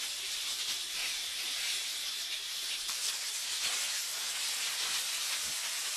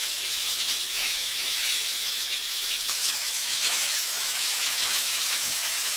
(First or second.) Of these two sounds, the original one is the first